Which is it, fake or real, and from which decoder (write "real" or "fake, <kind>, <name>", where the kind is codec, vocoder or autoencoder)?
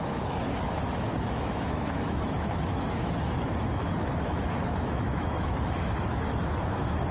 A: fake, autoencoder, DAC-VAE